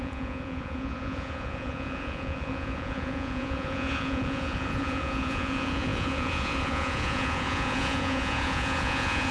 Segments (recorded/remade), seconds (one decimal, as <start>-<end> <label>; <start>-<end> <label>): 0.0-9.3 remade